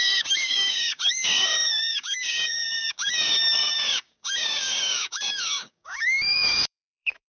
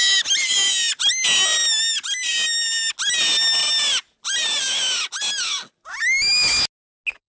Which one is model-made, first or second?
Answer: first